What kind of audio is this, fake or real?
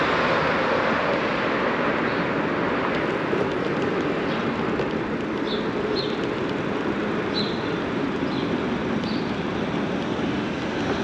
real